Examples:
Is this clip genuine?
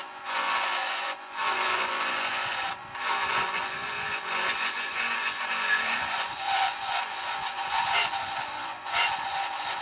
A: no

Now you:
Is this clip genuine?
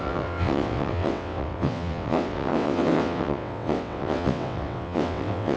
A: no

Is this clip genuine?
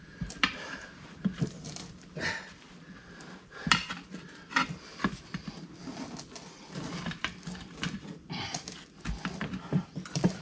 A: no